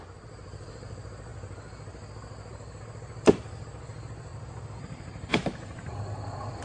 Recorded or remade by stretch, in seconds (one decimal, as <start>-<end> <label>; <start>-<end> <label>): 0.0-4.3 recorded; 4.3-5.9 remade; 5.9-6.6 recorded